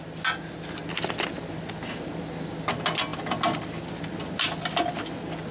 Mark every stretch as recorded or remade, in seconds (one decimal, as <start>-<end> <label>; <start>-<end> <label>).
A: 0.0-5.5 recorded